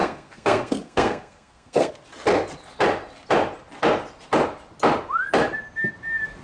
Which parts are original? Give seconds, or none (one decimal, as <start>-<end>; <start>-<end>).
1.9-6.4